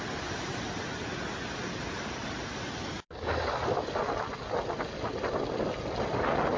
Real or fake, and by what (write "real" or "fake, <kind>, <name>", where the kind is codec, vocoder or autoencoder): real